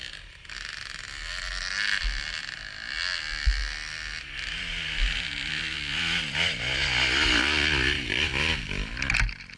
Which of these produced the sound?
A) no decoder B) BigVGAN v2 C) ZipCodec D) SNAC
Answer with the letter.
A